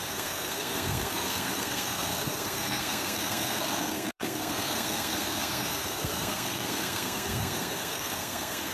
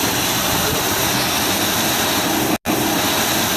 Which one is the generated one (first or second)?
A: first